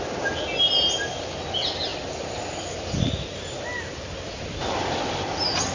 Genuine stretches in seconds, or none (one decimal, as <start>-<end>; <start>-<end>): 0.0-5.7